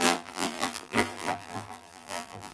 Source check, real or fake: fake